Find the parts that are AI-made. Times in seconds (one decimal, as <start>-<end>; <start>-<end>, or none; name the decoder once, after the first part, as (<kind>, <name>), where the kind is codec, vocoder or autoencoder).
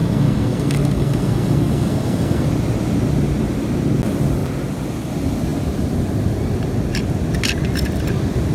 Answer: 0.0-2.5 (codec, SNAC)